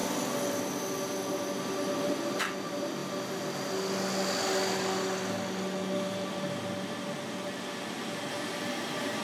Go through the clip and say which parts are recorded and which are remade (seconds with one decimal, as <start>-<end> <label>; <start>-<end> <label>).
0.0-9.2 recorded